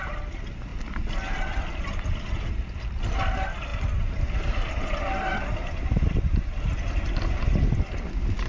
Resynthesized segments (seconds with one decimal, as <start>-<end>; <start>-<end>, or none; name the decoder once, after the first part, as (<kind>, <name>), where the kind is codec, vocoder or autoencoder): none